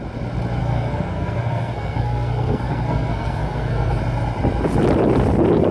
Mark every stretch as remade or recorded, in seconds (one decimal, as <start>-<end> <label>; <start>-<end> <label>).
0.0-0.6 recorded; 0.6-4.0 remade; 4.0-5.7 recorded